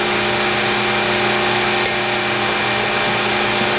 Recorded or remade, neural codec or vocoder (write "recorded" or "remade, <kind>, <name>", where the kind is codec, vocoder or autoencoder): recorded